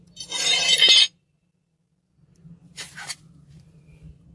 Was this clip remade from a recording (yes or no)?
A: no